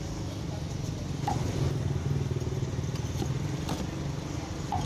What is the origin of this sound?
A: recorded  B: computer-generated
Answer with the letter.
A